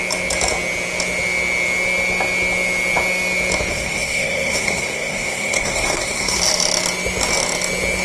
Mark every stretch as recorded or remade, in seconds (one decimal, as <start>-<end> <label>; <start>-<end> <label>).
0.0-3.7 recorded; 3.7-6.4 remade; 6.4-8.0 recorded